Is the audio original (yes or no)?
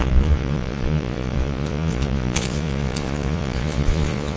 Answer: no